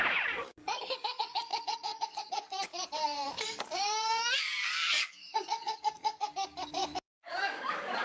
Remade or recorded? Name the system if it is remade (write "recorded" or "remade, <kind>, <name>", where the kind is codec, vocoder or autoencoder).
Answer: remade, codec, DAC